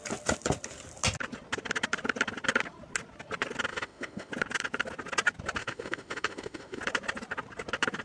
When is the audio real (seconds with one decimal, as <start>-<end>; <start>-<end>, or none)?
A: 0.0-3.7; 4.3-5.6; 6.8-8.0